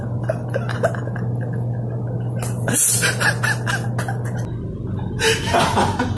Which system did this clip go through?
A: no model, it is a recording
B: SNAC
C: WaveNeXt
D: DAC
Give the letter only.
A